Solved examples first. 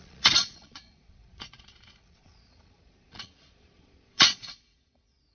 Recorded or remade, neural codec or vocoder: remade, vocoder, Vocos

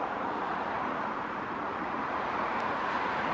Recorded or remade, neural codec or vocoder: remade, vocoder, Vocos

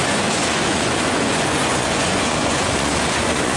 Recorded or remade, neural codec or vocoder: remade, vocoder, Vocos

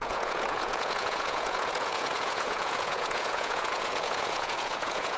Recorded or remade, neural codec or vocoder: remade, vocoder, Vocos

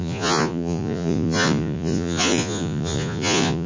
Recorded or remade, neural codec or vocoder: remade, vocoder, Vocos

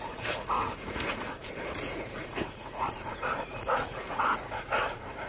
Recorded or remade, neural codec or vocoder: remade, vocoder, Vocos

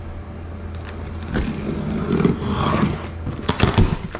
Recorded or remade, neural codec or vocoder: recorded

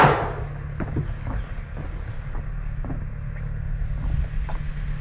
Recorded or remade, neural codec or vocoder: recorded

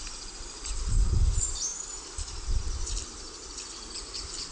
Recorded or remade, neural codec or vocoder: recorded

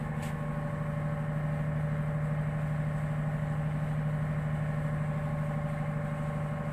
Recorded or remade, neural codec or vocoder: recorded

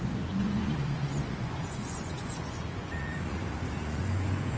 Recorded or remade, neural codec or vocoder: remade, vocoder, Vocos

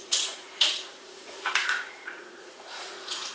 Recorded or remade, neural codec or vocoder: remade, vocoder, Vocos